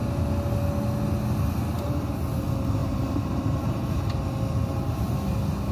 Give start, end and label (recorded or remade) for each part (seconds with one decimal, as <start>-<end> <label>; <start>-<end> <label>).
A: 0.0-2.8 recorded; 2.8-4.0 remade; 4.0-5.7 recorded